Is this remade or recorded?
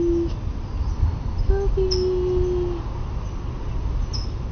recorded